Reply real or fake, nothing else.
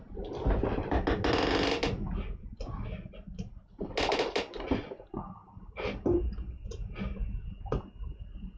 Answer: real